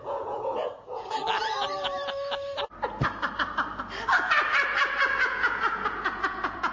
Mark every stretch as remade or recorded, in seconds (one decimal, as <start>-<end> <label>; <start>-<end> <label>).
0.0-1.2 remade; 1.2-5.2 recorded; 5.2-6.7 remade